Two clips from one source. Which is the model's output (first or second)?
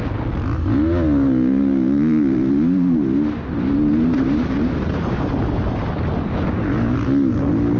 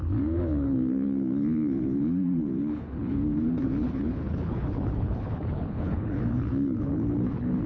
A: second